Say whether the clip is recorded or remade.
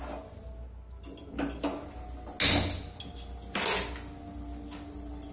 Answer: recorded